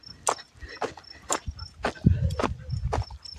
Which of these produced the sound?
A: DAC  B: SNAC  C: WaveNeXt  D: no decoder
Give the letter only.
D